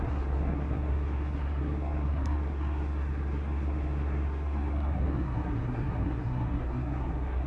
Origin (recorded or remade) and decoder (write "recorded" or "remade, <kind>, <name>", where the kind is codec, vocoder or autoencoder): remade, codec, SNAC